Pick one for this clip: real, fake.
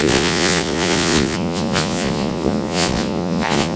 fake